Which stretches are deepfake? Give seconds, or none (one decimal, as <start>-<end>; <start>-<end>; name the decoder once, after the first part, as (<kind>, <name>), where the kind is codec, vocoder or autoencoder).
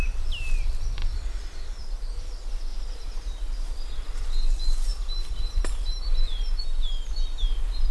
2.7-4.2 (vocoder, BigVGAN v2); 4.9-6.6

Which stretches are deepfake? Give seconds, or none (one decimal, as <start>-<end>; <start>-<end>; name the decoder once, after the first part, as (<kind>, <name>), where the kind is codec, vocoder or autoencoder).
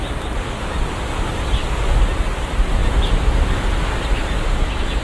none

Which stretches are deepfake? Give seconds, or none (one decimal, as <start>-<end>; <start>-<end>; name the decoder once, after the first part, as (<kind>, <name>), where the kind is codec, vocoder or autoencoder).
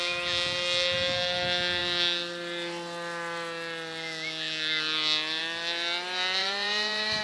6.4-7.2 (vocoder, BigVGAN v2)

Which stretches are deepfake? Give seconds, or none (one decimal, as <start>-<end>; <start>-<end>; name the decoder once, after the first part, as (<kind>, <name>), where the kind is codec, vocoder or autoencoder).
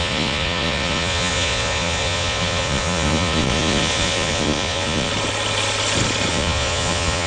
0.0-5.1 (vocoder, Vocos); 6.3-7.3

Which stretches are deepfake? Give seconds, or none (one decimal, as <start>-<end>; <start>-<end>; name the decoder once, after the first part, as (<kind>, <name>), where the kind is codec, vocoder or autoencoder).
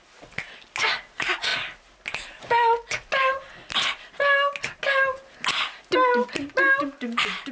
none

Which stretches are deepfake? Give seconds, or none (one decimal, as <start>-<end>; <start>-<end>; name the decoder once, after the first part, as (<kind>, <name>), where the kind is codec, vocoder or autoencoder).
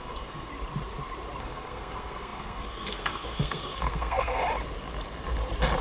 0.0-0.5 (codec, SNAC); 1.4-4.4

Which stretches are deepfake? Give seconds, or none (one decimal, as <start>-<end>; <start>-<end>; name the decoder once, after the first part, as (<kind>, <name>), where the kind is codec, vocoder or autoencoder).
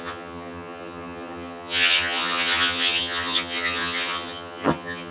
0.0-5.1 (vocoder, HiFi-GAN)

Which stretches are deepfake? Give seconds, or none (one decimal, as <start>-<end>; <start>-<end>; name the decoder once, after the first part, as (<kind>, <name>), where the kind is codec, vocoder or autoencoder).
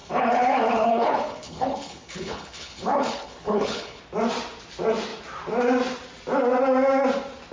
0.0-4.0 (codec, HILCodec)